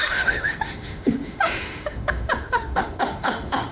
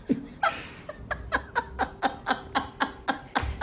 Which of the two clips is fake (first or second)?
first